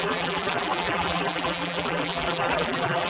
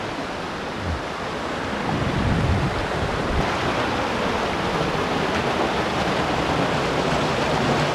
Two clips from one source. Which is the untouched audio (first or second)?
second